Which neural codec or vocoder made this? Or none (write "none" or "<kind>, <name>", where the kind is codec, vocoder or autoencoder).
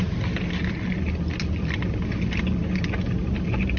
none